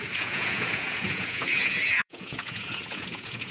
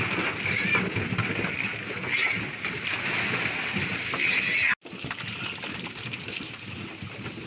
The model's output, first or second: first